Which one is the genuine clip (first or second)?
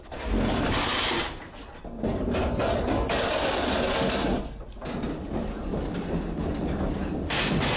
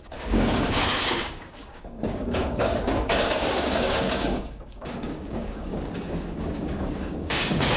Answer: first